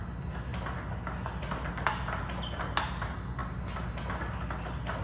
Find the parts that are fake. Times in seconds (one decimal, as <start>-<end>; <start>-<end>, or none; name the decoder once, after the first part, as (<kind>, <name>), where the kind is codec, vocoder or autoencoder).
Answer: none